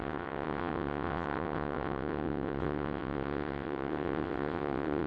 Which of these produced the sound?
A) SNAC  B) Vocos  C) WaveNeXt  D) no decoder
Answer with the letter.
C